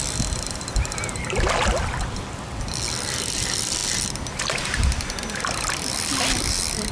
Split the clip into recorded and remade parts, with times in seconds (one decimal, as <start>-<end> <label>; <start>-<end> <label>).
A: 0.0-6.9 recorded